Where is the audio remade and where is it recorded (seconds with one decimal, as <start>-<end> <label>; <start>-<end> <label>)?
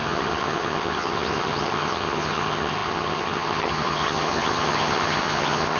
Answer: 0.0-5.8 remade